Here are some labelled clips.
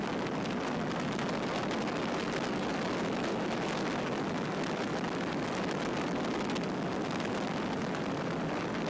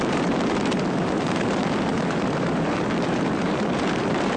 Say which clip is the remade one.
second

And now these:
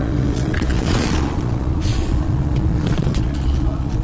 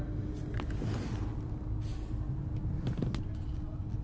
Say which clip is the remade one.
first